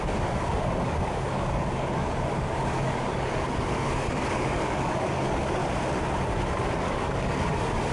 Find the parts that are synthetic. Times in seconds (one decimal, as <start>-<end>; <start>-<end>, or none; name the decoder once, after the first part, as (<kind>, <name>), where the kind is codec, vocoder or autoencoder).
0.0-5.6 (codec, DAC); 6.7-7.9